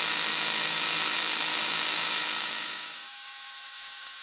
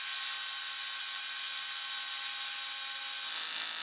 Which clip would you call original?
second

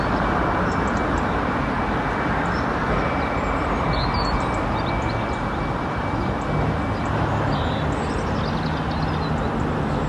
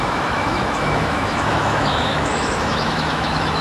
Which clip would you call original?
first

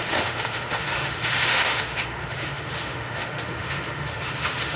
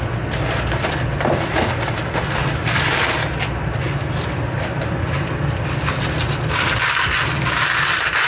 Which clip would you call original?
second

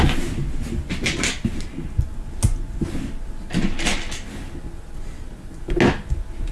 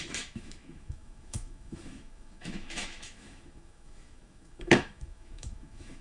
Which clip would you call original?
first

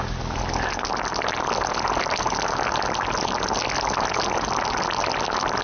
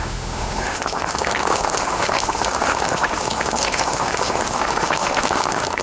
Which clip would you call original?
first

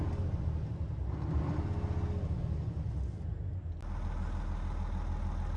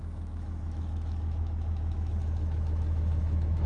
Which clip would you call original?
first